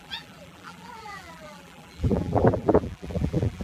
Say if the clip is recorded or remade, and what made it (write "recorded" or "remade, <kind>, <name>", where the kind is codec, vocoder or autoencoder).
remade, vocoder, BigVGAN v2